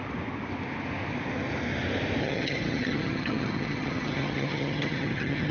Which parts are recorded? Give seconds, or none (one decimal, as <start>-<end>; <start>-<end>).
0.0-2.2